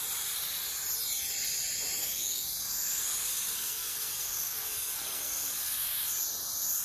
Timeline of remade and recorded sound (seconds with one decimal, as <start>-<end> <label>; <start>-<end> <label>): 0.0-2.0 recorded; 2.0-6.1 remade; 6.1-6.8 recorded